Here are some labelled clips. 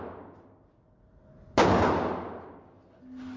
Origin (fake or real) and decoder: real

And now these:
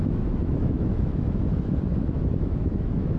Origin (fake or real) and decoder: fake, autoencoder, DAC-VAE